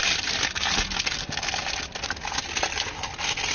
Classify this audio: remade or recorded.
recorded